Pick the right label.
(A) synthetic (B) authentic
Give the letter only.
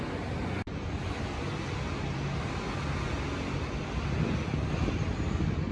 B